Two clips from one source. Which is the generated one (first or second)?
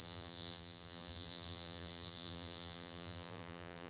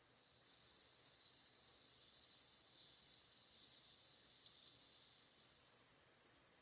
first